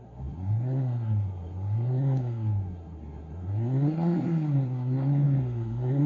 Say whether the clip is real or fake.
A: fake